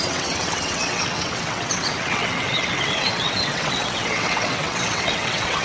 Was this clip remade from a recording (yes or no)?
yes